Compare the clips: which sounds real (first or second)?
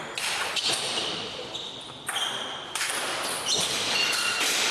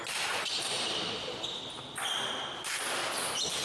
second